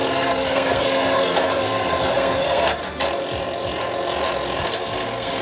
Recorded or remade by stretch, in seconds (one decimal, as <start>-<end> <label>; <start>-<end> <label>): 0.0-2.8 remade; 2.8-4.6 recorded; 4.6-5.4 remade